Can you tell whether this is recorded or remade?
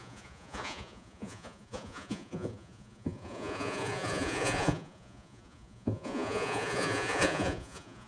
remade